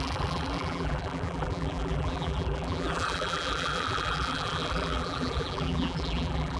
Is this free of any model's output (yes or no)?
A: no